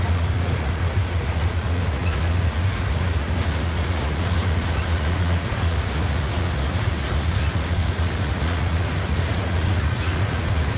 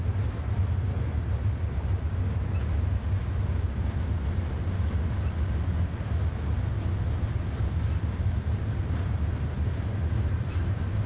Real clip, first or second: second